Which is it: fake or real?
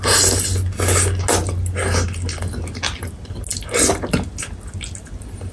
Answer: real